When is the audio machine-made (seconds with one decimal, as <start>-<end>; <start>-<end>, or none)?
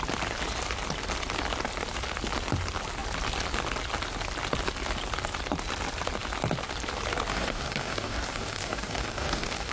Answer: 7.3-9.7